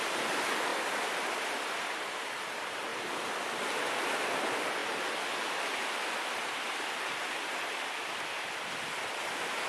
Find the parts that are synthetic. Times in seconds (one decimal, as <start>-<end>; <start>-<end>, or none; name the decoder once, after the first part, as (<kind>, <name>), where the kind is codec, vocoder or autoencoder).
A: none